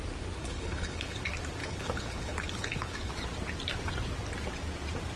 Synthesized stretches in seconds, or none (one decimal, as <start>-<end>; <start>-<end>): 0.4-1.2; 1.6-3.1